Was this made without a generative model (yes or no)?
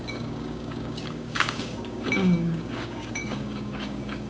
no